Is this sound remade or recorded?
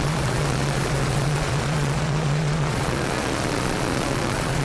remade